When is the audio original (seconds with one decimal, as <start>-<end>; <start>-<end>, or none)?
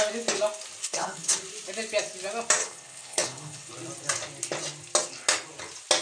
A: 0.0-0.8; 1.4-2.6; 3.7-6.0